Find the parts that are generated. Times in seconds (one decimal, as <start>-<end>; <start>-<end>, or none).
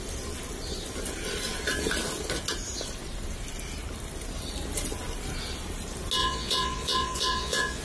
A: 6.2-7.8